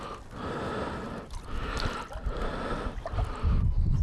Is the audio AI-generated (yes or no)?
no